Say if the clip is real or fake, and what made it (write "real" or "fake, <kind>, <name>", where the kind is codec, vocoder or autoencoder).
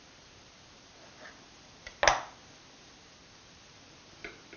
real